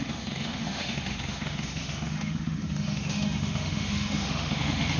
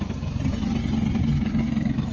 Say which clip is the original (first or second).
second